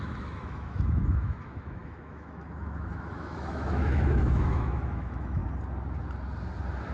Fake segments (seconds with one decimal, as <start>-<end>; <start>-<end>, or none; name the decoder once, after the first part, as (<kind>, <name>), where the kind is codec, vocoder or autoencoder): 0.0-5.4 (autoencoder, DAC-VAE)